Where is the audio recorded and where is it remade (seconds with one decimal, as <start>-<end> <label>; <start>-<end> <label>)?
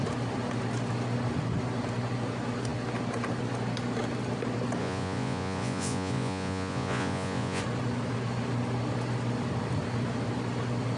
0.0-4.8 recorded; 4.8-7.6 remade; 7.6-11.0 recorded